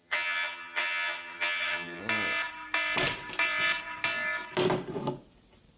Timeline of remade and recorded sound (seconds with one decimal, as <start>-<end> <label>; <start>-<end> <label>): 0.0-2.0 remade; 2.0-5.8 recorded